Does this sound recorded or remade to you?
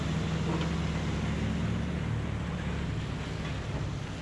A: recorded